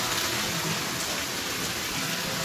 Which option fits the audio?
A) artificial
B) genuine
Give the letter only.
B